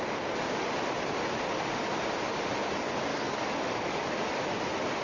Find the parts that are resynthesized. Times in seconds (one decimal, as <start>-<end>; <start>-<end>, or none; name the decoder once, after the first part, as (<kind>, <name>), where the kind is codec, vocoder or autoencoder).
3.1-4.0 (codec, DAC)